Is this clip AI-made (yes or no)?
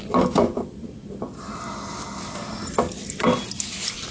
no